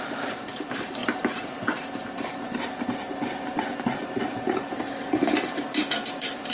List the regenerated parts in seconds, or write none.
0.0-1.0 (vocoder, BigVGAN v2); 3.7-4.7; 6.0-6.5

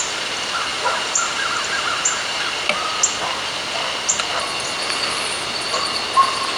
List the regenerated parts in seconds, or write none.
0.7-2.4 (vocoder, BigVGAN v2)

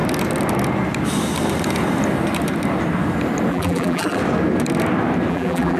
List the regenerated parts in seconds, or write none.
3.5-4.2 (vocoder, BigVGAN v2); 5.3-5.8